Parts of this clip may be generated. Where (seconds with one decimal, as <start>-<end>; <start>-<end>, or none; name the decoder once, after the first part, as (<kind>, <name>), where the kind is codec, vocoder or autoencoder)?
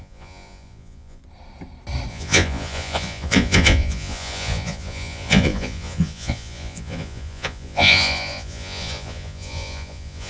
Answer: 0.0-1.2 (vocoder, Vocos); 2.1-10.3